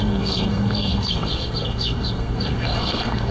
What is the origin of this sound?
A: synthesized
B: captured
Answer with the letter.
A